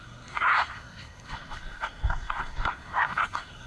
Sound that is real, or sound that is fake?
fake